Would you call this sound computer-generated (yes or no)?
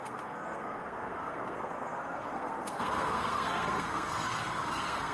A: yes